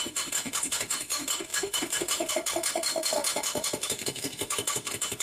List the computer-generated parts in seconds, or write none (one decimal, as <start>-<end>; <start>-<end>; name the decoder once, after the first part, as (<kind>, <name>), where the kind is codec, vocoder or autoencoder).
0.0-5.2 (autoencoder, DAC-VAE)